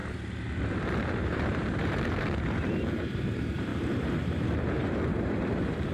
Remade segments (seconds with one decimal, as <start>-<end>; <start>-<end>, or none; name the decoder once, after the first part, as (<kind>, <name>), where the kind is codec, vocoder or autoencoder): 0.0-5.9 (vocoder, BigVGAN v2)